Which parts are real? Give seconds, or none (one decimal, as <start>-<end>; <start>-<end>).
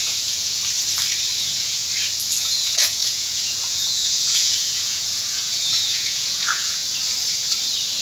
0.6-1.4; 1.8-2.4; 6.8-8.0